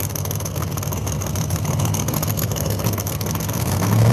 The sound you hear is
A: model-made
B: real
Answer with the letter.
A